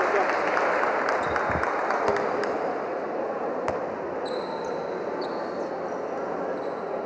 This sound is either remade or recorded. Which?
recorded